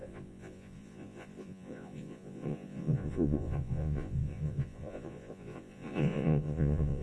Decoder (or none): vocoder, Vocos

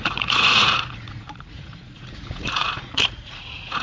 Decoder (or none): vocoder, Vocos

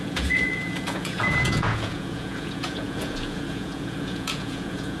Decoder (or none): vocoder, Vocos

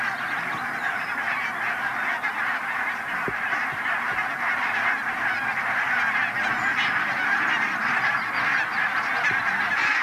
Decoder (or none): none